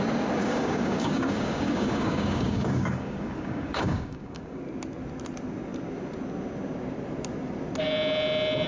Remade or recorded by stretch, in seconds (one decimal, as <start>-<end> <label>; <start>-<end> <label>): 0.0-0.4 recorded; 0.4-4.6 remade; 4.6-8.7 recorded